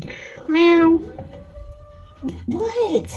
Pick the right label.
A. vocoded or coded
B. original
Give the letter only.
A